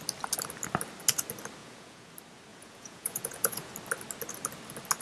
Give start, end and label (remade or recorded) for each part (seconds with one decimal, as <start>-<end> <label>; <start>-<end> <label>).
0.0-1.6 recorded; 1.6-2.1 remade; 2.1-2.5 recorded; 2.5-3.7 remade; 3.7-5.0 recorded